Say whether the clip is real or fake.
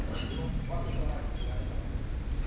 real